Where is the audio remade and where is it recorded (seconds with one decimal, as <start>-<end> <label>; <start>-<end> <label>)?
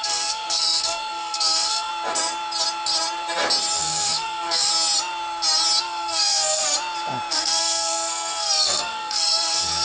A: 0.0-1.9 remade; 1.9-3.8 recorded; 3.8-4.7 remade; 4.7-5.8 recorded; 5.8-6.6 remade; 6.6-7.3 recorded; 7.3-9.8 remade